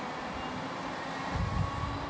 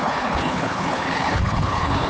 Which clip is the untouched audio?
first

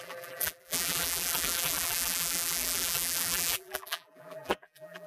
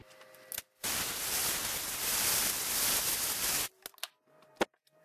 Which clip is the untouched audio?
second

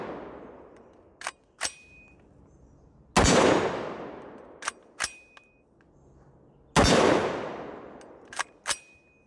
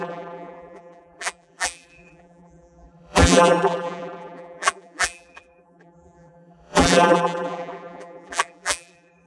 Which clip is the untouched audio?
first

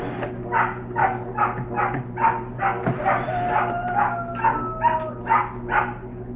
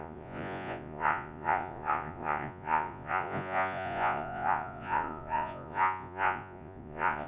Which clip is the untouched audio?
first